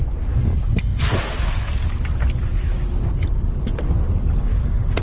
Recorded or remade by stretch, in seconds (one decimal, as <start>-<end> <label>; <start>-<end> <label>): 0.0-5.0 recorded

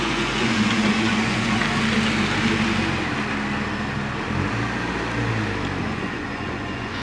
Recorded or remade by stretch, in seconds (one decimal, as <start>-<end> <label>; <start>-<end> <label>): 0.0-1.6 remade; 1.6-5.8 recorded; 5.8-7.0 remade

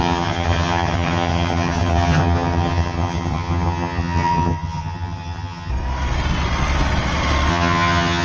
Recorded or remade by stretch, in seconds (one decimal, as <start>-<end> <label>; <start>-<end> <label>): 0.0-5.7 remade; 5.7-7.5 recorded; 7.5-8.2 remade

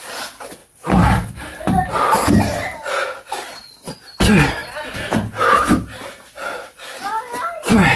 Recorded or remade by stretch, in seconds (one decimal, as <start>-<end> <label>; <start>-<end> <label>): 0.0-8.0 recorded

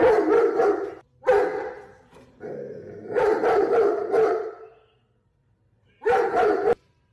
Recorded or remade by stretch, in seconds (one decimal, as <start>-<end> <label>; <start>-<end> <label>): 0.0-1.5 recorded; 1.5-2.4 remade; 2.4-3.0 recorded; 3.0-7.1 remade